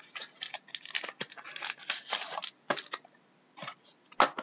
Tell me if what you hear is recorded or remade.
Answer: recorded